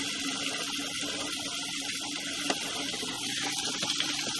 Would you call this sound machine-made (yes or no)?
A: no